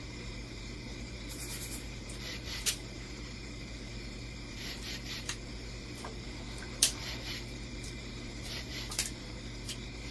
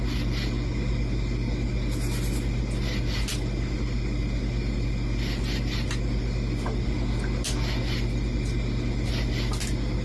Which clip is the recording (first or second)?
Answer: second